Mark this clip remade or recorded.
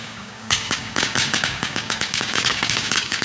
remade